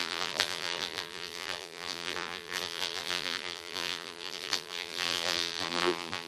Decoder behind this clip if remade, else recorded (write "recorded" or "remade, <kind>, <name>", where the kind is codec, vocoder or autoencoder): remade, vocoder, BigVGAN v2